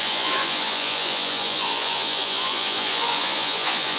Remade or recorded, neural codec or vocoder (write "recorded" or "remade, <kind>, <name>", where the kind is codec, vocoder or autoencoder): remade, vocoder, Vocos